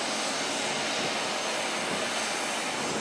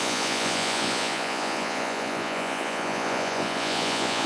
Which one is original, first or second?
first